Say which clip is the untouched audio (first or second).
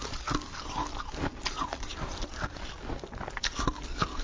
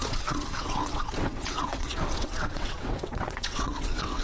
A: first